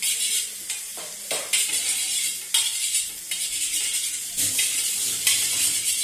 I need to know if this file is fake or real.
fake